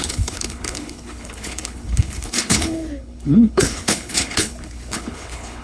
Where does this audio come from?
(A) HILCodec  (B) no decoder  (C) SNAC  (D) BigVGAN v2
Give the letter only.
A